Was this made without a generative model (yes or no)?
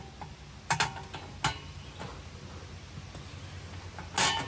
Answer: yes